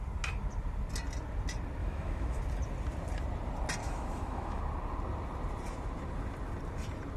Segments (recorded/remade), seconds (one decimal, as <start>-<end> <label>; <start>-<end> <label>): 0.0-1.8 recorded; 1.8-2.4 remade; 2.4-3.8 recorded; 3.8-4.6 remade; 4.6-7.2 recorded